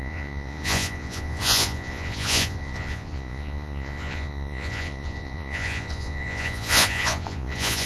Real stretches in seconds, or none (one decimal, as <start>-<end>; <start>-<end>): none